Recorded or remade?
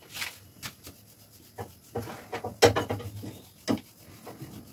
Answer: recorded